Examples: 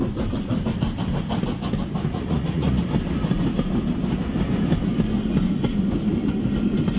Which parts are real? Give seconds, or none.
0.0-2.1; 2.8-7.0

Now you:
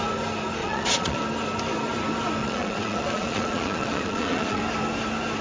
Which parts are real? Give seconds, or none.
0.0-0.6; 1.2-2.4; 4.6-5.4